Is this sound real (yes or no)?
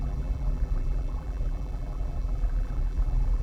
no